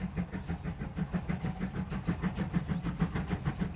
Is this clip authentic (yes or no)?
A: yes